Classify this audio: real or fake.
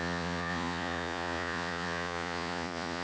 fake